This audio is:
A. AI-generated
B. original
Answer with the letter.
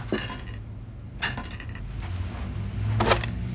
B